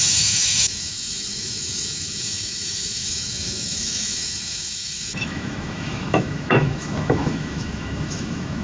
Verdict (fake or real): fake